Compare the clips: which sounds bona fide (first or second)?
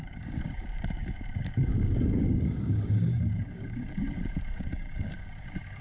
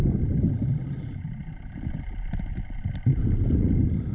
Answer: second